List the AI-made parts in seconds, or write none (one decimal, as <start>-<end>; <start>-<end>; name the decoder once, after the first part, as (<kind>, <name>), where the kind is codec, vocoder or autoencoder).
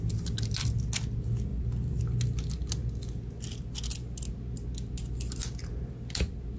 none